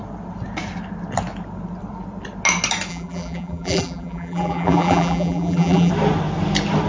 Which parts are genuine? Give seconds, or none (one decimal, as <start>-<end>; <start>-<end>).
0.0-2.9; 5.9-6.9